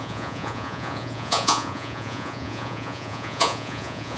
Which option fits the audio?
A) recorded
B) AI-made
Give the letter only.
B